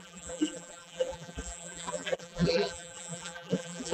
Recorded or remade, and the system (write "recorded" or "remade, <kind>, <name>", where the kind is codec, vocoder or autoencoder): remade, vocoder, BigVGAN v2